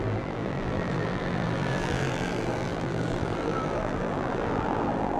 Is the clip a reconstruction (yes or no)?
yes